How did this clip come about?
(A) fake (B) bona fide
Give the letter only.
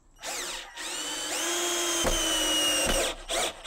B